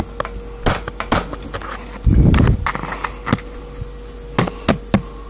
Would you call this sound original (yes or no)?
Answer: yes